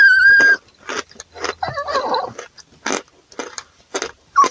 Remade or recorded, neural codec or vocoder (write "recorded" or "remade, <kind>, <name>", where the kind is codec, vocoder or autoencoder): recorded